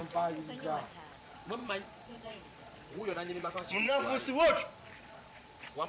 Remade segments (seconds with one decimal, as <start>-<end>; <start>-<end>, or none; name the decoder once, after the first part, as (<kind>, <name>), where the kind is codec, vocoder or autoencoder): 1.2-4.0 (vocoder, Vocos); 5.0-5.9